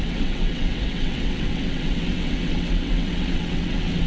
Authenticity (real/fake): fake